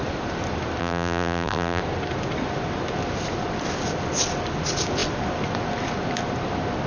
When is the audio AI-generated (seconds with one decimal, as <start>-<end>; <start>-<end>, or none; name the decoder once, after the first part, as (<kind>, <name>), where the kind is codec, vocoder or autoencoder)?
0.8-1.8 (vocoder, BigVGAN v2)